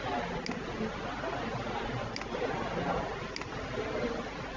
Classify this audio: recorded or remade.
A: recorded